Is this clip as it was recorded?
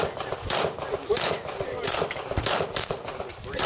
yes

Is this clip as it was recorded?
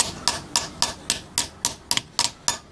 yes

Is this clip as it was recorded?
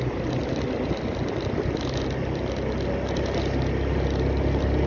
yes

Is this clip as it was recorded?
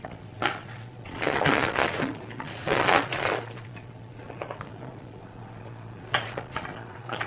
no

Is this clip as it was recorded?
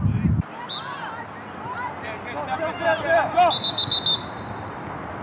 yes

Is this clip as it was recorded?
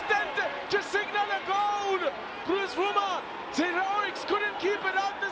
yes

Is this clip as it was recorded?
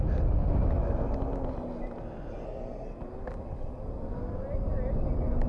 yes